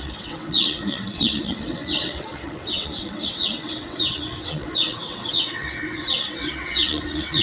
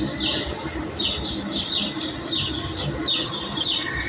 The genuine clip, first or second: second